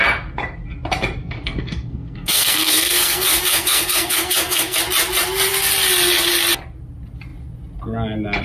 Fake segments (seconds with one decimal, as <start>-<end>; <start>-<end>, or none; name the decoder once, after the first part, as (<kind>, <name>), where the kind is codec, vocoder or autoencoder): 1.2-4.8 (codec, SNAC)